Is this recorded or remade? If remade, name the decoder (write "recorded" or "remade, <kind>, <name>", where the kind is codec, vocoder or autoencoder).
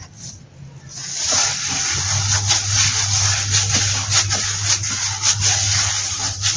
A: recorded